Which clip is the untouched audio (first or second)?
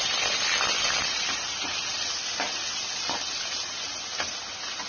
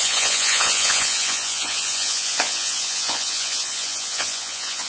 first